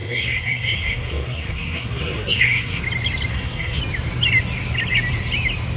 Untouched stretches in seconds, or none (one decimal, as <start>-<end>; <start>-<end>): 2.8-3.3; 3.8-5.8